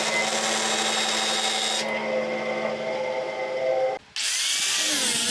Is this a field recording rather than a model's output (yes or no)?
yes